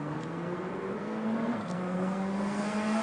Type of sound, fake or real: fake